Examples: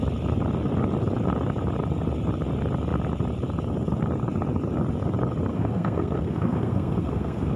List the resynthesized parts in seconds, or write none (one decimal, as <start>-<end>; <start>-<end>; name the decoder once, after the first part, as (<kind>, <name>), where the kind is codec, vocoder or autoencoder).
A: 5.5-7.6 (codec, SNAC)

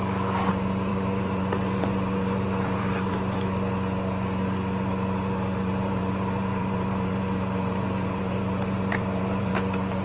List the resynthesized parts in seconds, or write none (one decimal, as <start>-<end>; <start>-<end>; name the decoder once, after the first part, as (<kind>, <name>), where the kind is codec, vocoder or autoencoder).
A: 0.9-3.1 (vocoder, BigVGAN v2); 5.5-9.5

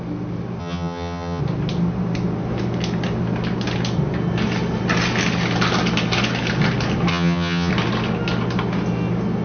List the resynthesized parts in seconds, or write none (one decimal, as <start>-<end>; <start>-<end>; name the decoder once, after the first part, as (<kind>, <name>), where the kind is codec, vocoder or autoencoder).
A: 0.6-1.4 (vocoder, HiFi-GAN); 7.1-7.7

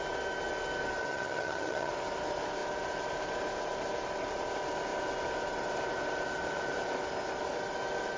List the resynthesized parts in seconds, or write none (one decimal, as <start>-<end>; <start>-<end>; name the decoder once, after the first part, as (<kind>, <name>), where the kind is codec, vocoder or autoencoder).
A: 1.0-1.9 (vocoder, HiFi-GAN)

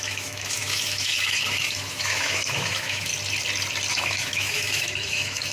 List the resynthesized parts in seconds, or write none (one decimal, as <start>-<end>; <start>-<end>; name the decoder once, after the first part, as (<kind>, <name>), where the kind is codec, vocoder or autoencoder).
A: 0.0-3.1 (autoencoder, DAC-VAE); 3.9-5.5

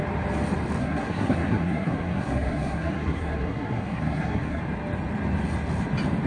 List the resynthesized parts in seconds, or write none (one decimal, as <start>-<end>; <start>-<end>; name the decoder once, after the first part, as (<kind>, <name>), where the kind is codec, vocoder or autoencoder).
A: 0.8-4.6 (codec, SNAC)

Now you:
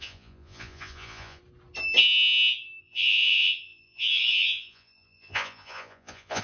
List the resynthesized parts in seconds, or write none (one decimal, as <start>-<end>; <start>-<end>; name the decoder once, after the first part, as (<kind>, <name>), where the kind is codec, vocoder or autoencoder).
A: 0.0-1.4 (vocoder, Vocos); 2.8-6.4